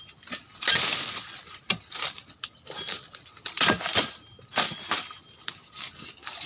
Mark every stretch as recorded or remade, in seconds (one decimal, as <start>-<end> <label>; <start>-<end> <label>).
0.0-6.5 recorded